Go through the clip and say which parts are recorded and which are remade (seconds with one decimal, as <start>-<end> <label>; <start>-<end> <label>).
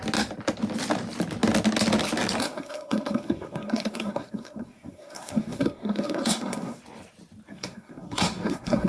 0.0-2.4 recorded; 2.4-6.8 remade; 6.8-7.5 recorded; 7.5-8.9 remade